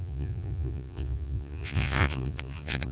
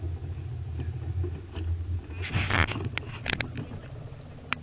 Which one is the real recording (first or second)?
second